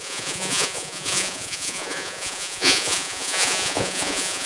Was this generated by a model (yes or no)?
yes